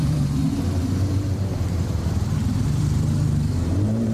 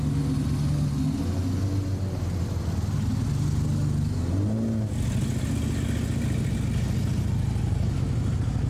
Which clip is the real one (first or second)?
second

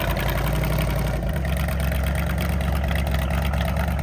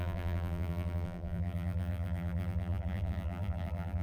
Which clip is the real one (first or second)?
first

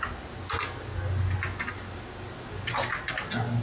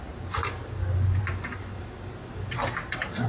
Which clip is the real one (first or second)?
first